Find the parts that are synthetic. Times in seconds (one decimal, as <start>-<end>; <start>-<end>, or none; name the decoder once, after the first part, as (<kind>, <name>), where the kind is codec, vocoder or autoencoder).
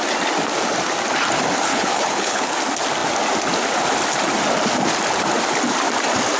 1.7-2.6 (codec, HILCodec)